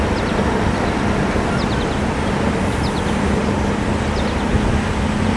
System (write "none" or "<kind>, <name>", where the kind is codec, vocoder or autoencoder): none